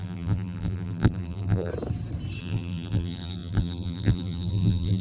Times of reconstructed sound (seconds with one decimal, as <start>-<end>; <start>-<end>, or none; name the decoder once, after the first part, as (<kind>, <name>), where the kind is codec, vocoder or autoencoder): 0.0-1.7 (vocoder, BigVGAN v2); 2.4-5.0